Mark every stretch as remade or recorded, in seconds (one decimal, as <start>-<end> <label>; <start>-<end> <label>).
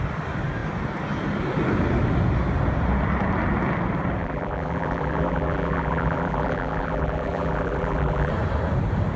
0.0-4.2 recorded; 4.2-8.3 remade; 8.3-9.2 recorded